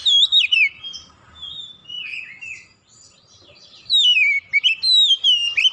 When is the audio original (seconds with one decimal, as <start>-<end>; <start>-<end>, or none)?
0.0-5.7